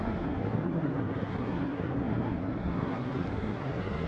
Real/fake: fake